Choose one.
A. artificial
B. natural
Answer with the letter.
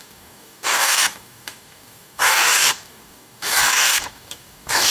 A